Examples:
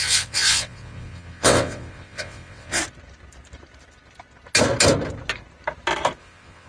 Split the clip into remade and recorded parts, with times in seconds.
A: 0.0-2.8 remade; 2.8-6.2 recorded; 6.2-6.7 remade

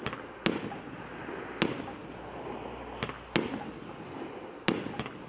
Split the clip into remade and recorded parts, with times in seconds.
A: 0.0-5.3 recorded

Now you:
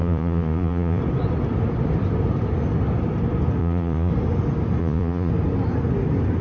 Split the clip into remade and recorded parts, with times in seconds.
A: 0.0-1.0 remade; 1.0-3.6 recorded; 3.6-4.1 remade; 4.1-4.8 recorded; 4.8-5.3 remade; 5.3-6.4 recorded